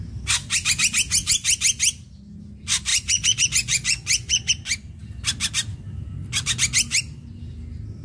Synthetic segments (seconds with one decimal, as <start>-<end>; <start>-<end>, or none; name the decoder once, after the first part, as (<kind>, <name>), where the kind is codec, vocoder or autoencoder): 2.9-4.5 (vocoder, Vocos)